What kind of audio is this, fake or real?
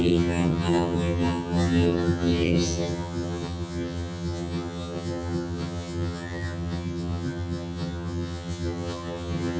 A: fake